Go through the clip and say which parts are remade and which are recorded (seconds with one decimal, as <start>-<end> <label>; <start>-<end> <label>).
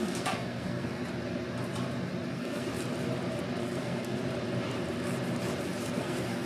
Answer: 0.0-1.0 remade; 1.0-2.3 recorded; 2.3-2.7 remade; 2.7-3.6 recorded; 3.6-4.2 remade; 4.2-5.8 recorded; 5.8-6.5 remade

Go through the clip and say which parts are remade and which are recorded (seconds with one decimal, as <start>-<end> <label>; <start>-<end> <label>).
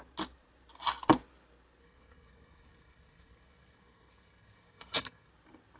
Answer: 0.0-1.8 recorded; 1.8-5.3 remade; 5.3-5.8 recorded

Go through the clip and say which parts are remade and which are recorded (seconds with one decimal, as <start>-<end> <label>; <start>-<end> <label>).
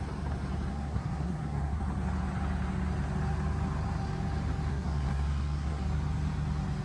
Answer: 0.0-0.7 recorded; 0.7-1.8 remade; 1.8-4.7 recorded; 4.7-5.8 remade; 5.8-6.8 recorded